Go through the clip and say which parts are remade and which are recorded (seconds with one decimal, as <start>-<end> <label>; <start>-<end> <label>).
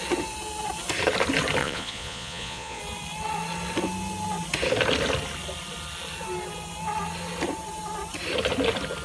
0.0-1.6 recorded; 1.6-2.8 remade; 2.8-9.0 recorded